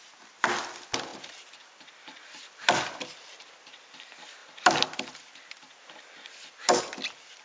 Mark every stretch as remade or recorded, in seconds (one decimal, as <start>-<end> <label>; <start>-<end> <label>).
0.0-1.1 recorded; 1.1-4.0 remade; 4.0-4.4 recorded; 4.4-6.8 remade; 6.8-7.4 recorded